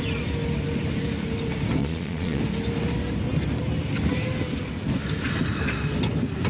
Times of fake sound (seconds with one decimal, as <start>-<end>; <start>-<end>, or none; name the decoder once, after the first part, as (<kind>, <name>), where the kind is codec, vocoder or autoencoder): 1.8-2.4 (vocoder, Vocos)